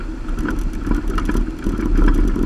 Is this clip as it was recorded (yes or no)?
yes